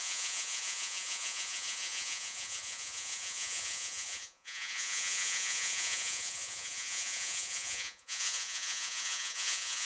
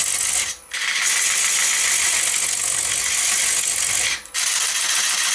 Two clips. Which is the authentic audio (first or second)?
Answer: second